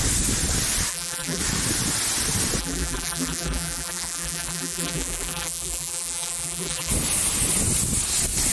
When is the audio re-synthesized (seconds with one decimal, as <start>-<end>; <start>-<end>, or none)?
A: 0.9-1.4; 2.6-6.9